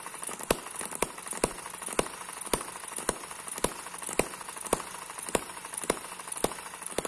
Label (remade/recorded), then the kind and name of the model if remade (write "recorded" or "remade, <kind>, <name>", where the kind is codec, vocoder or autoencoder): recorded